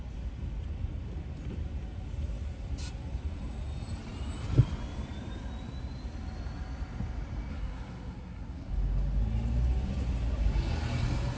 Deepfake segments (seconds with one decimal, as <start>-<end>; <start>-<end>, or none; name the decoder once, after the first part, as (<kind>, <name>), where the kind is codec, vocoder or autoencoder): 7.5-8.7 (codec, SNAC)